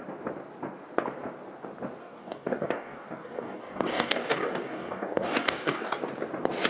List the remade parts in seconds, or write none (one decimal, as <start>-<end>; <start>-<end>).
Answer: 2.0-6.0